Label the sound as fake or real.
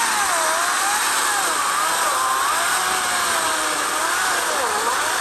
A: real